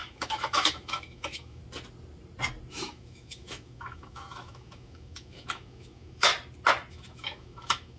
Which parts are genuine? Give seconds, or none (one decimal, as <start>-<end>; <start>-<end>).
1.6-2.7; 6.3-6.9